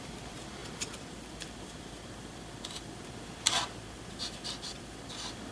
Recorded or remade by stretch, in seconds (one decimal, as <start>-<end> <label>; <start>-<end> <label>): 0.0-5.5 remade